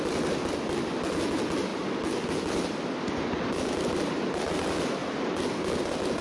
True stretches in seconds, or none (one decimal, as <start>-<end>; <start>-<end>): 0.0-6.2